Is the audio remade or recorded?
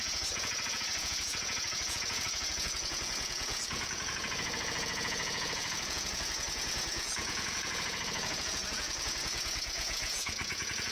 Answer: remade